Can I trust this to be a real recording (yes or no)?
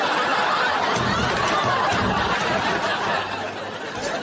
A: yes